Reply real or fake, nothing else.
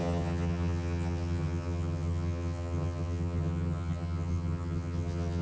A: fake